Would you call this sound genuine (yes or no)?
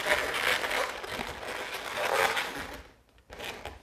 yes